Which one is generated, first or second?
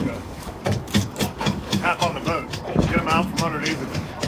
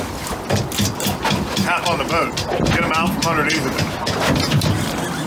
first